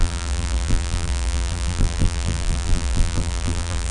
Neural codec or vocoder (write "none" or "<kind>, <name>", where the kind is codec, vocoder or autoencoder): vocoder, BigVGAN v2